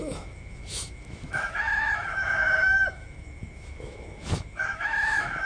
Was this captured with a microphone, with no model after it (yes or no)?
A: no